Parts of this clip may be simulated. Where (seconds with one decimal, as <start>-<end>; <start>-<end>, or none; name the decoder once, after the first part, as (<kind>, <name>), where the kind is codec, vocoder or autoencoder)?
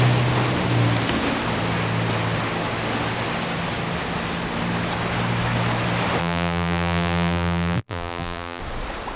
6.2-8.6 (vocoder, BigVGAN v2)